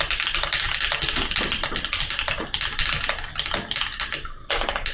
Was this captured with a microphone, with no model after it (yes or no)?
yes